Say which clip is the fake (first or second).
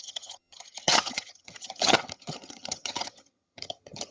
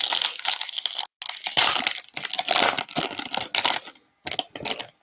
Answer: first